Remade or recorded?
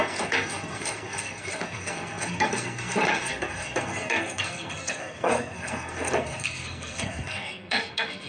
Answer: remade